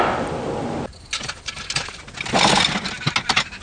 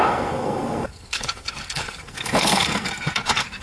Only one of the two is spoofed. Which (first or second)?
second